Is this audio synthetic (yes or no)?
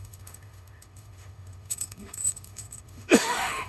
yes